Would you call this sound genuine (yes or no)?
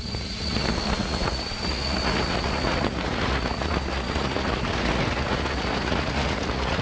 no